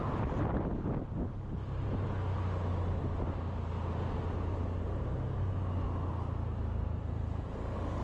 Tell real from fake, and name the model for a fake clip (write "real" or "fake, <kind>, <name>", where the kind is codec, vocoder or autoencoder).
real